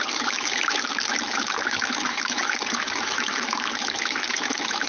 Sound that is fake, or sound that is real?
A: fake